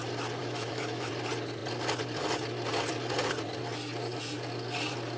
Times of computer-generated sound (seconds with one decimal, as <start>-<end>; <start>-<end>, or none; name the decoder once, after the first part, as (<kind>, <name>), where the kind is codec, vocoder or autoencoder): 0.4-1.1 (autoencoder, DAC-VAE)